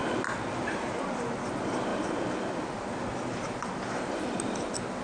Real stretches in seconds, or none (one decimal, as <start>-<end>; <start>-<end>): 0.0-0.9